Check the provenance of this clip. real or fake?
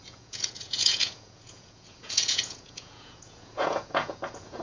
fake